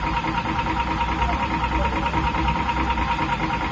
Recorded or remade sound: recorded